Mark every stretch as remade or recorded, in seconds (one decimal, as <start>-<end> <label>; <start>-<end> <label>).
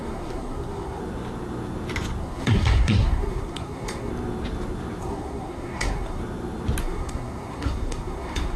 0.0-1.0 remade; 1.0-2.2 recorded; 2.2-4.1 remade; 4.1-5.0 recorded; 5.0-6.2 remade; 6.2-6.8 recorded; 6.8-8.6 remade